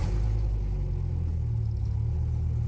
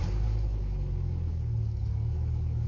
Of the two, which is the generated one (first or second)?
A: second